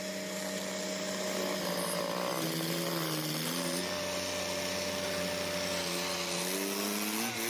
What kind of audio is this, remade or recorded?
recorded